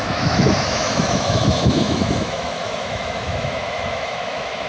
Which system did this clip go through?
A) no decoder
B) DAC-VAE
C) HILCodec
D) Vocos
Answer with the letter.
B